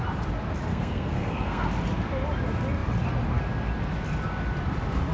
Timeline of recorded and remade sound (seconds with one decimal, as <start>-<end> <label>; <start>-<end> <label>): 0.0-0.7 recorded; 0.7-1.7 remade; 1.7-5.1 recorded